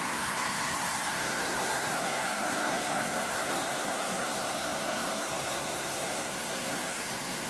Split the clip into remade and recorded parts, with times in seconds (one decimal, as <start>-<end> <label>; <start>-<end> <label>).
0.0-7.5 remade